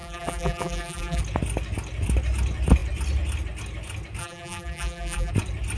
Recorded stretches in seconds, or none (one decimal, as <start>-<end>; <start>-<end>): 1.2-4.2; 5.3-5.8